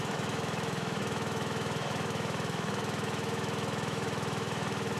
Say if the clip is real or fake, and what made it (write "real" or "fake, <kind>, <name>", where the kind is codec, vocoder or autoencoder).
fake, autoencoder, DAC-VAE